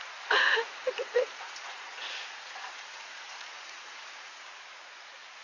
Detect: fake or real fake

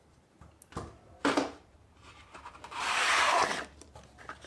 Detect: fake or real real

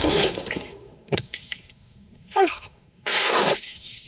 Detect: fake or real fake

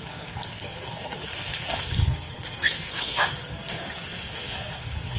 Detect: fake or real fake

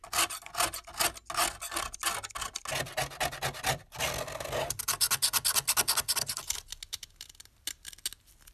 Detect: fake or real real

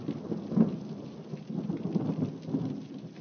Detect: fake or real real